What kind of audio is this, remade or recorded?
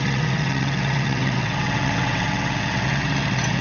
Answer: remade